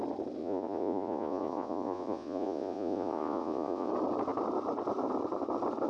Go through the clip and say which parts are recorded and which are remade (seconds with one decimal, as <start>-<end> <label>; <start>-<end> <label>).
0.0-0.4 recorded; 0.4-3.9 remade; 3.9-5.9 recorded